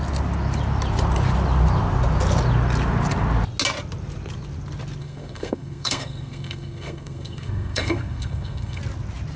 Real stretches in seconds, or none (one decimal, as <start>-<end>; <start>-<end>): 0.0-5.0; 8.8-9.4